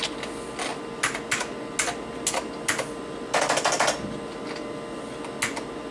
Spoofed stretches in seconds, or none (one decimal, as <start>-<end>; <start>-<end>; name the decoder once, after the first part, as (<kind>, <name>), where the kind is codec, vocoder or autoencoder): none